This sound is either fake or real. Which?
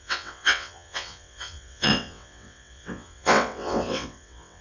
fake